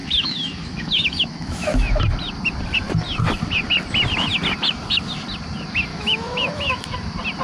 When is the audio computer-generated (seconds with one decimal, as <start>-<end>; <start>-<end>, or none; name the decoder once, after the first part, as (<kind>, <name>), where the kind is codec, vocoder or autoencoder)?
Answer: 0.0-2.0 (autoencoder, DAC-VAE); 5.9-6.8